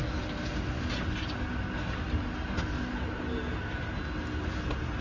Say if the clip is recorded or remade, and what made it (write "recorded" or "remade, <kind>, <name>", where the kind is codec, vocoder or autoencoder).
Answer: recorded